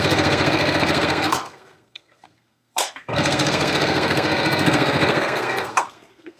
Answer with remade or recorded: remade